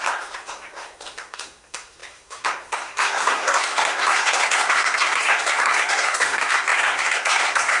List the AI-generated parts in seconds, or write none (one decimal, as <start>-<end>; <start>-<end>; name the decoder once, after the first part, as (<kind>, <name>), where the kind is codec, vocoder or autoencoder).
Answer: 0.0-7.8 (codec, SNAC)